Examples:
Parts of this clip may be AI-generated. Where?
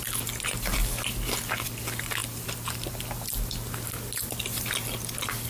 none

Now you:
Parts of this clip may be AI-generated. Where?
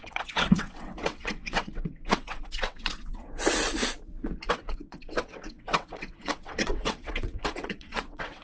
0.0-3.8 (vocoder, WaveNeXt); 4.5-8.4